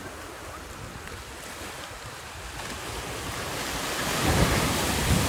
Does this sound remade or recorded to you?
recorded